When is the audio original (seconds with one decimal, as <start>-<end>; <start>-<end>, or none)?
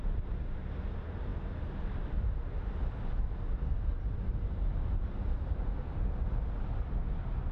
0.0-7.5